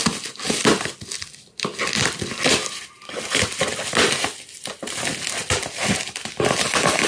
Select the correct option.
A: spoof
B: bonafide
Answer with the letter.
B